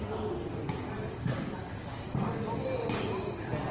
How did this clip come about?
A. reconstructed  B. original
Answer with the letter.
B